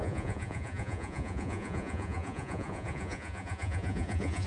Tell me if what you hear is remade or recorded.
remade